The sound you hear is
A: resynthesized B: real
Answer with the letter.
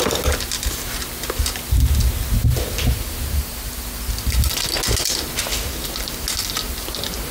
B